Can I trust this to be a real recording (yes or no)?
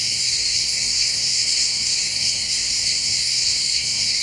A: no